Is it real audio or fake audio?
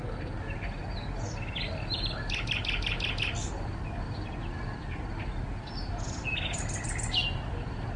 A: real